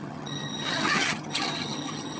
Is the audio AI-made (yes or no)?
yes